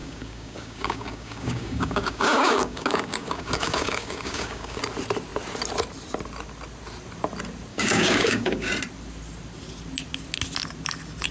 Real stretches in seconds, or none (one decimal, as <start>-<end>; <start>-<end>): 4.8-7.7; 8.7-11.3